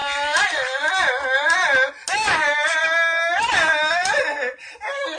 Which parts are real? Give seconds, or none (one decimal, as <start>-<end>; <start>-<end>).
0.0-5.2